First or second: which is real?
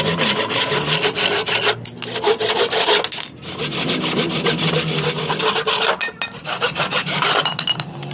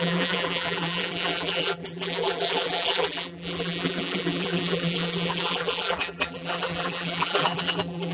first